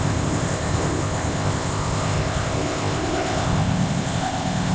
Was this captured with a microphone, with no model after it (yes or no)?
no